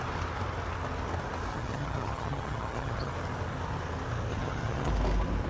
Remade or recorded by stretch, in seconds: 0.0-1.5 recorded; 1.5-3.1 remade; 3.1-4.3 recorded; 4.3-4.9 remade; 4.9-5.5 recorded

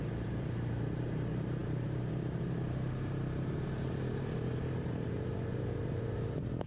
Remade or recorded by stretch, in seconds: 0.0-6.7 remade

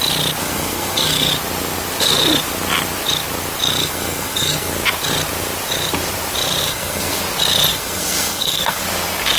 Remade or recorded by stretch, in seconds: 0.0-0.4 recorded; 0.4-1.3 remade; 1.3-3.8 recorded; 3.8-4.7 remade; 4.7-6.6 recorded; 6.6-7.2 remade; 7.2-7.7 recorded; 7.7-8.8 remade; 8.8-9.4 recorded